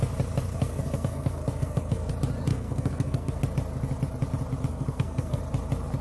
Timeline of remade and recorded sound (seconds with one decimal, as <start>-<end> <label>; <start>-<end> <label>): 0.0-0.5 recorded; 0.5-2.1 remade; 2.1-2.5 recorded; 2.5-3.4 remade; 3.4-4.7 recorded; 4.7-5.4 remade; 5.4-6.0 recorded